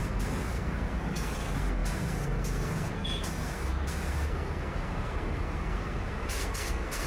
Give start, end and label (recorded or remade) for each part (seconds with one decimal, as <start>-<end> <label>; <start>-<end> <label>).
0.0-7.1 remade